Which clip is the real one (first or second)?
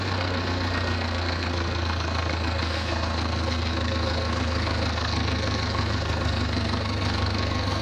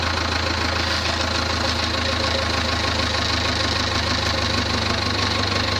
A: second